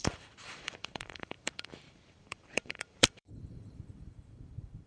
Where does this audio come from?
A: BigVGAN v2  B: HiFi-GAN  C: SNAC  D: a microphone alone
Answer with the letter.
A